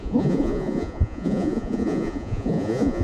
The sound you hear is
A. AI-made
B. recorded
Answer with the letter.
A